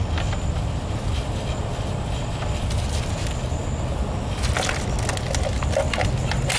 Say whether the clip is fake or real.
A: real